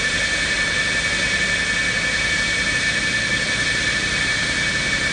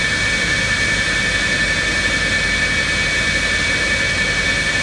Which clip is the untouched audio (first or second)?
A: second